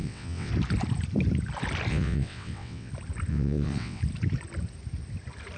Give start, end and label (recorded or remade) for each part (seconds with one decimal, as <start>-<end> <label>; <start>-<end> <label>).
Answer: 0.0-0.5 remade; 0.5-1.9 recorded; 1.9-2.9 remade; 2.9-3.3 recorded; 3.3-4.0 remade; 4.0-5.6 recorded